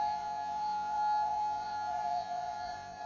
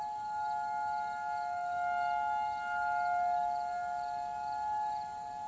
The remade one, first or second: first